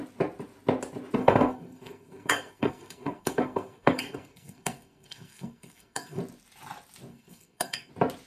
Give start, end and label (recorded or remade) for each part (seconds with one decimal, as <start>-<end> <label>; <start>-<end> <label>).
0.0-1.2 recorded; 1.2-6.2 remade; 6.2-7.1 recorded; 7.1-7.9 remade; 7.9-8.3 recorded